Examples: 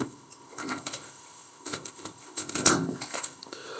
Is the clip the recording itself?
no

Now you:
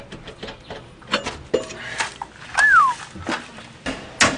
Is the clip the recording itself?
yes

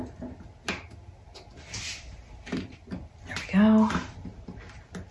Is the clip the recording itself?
yes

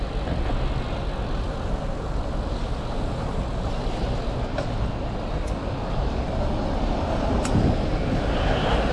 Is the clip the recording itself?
yes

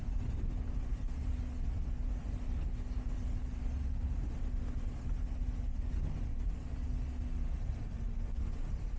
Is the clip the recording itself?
yes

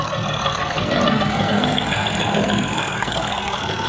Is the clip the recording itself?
no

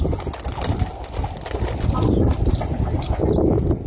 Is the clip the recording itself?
yes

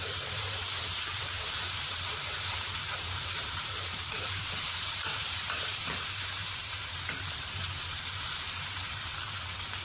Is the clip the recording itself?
no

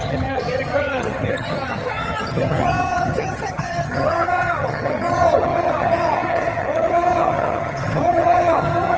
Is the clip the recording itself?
no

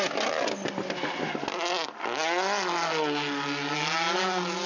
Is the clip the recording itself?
yes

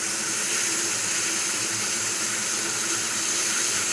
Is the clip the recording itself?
no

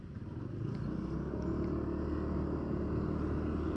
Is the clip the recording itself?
yes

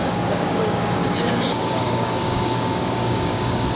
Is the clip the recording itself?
no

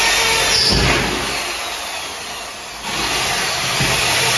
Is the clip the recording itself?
yes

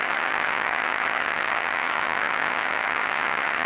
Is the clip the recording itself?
no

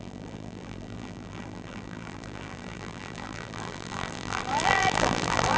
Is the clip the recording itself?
no